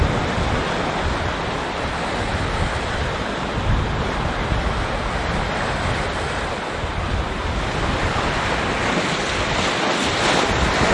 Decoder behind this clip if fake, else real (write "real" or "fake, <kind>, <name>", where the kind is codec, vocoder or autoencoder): real